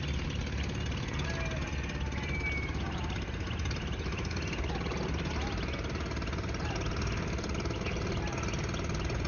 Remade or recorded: recorded